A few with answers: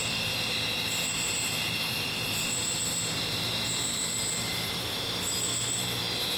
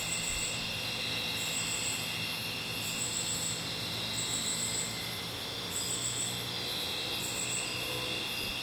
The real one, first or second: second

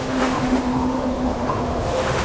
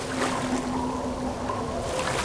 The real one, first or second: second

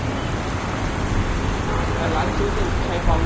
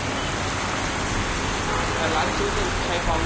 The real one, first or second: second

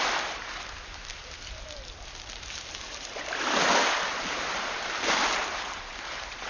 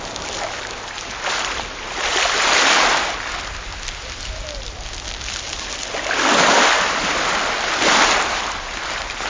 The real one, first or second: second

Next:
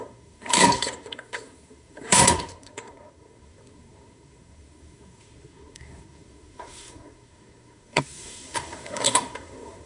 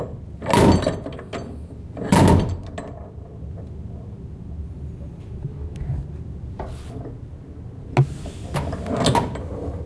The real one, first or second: second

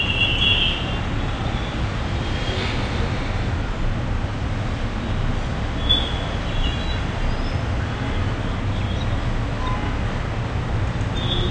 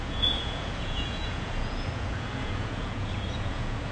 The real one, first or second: first